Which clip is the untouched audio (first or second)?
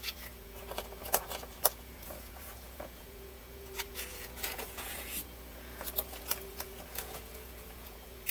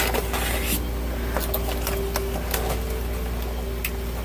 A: second